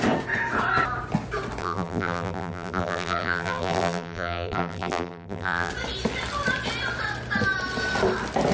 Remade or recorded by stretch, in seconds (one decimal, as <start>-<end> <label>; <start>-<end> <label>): 0.0-1.6 recorded; 1.6-5.7 remade; 5.7-8.5 recorded